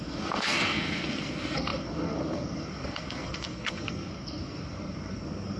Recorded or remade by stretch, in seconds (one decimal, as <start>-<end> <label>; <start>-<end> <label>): 0.0-5.6 remade